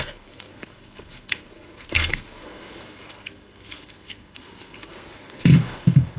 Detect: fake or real fake